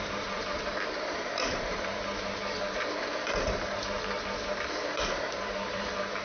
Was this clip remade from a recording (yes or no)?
yes